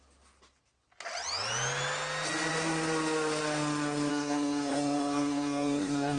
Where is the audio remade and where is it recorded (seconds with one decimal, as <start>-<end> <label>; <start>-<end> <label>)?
0.0-4.1 recorded; 4.1-6.2 remade